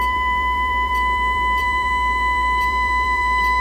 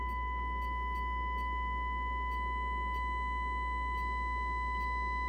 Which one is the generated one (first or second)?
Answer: first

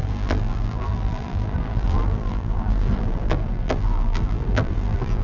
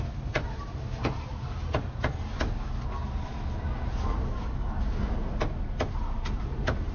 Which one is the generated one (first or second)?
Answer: first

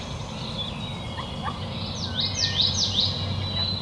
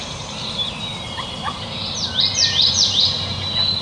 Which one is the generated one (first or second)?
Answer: second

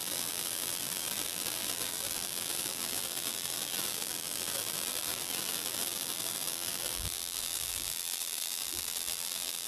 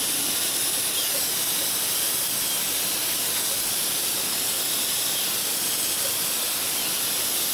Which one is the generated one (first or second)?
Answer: first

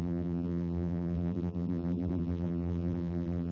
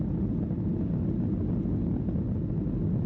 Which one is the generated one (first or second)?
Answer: first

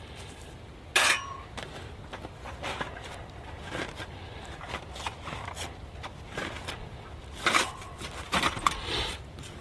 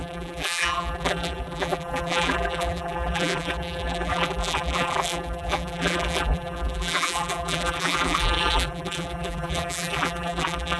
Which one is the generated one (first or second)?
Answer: second